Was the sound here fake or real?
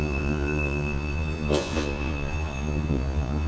fake